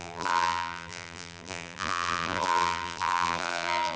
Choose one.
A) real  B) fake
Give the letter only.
B